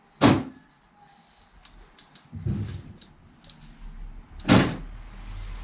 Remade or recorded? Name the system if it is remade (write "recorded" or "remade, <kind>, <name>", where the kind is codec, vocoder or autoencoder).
recorded